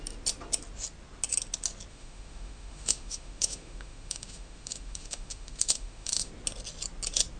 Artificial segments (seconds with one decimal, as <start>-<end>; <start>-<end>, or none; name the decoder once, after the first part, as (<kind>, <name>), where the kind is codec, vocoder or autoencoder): 1.9-6.3 (autoencoder, DAC-VAE)